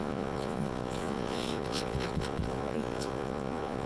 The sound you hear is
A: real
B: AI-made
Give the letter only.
B